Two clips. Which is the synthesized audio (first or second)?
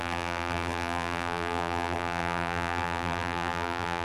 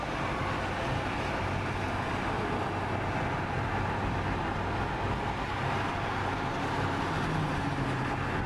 first